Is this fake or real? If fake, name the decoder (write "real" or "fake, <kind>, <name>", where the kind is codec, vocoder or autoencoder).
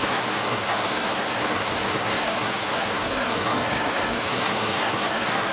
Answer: fake, codec, SNAC